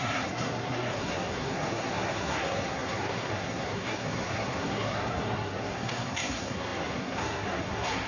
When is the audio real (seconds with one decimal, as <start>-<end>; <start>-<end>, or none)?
none